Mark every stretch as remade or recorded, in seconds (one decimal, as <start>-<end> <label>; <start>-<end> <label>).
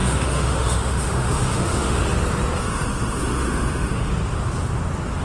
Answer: 0.0-2.0 remade; 2.0-2.6 recorded; 2.6-4.1 remade; 4.1-5.2 recorded